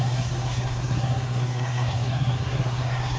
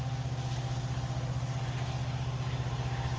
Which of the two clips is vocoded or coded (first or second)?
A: first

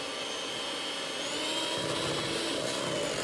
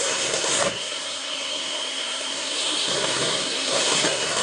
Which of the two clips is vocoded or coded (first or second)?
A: second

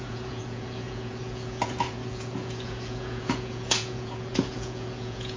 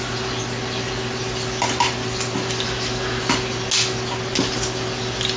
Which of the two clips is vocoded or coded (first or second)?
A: first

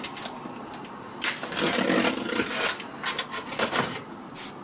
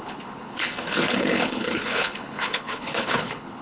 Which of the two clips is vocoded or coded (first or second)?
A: second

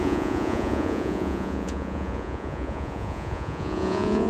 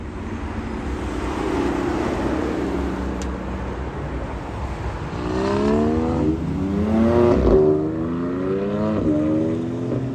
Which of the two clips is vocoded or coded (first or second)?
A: first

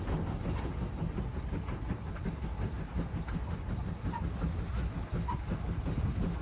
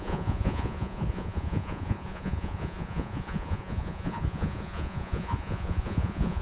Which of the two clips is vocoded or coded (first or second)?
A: second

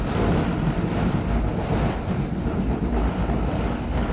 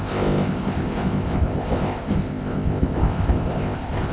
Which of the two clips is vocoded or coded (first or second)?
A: second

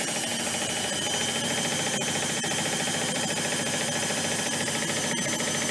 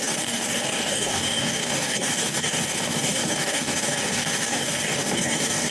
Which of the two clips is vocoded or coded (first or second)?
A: second